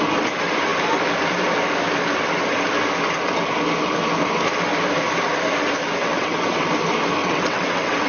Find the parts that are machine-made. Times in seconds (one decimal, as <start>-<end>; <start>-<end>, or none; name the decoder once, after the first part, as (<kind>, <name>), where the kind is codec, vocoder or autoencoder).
6.0-6.7 (vocoder, WaveNeXt); 7.2-8.1